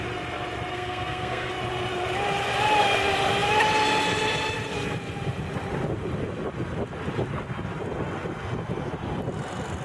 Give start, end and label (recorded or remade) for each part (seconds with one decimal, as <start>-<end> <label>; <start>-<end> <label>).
0.0-0.7 recorded; 0.7-1.5 remade; 1.5-9.8 recorded